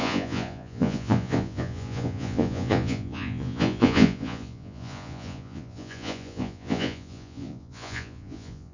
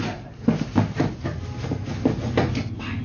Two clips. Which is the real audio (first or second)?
second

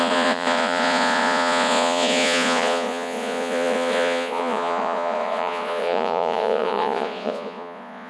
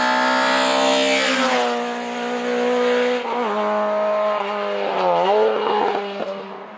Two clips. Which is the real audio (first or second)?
second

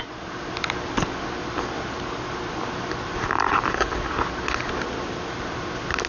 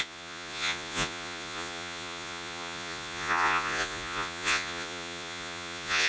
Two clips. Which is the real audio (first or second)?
first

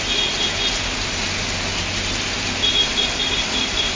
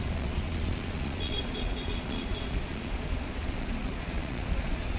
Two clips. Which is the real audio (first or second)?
first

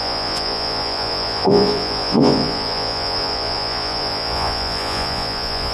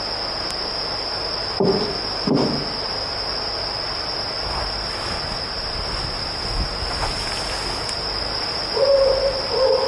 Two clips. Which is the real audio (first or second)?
second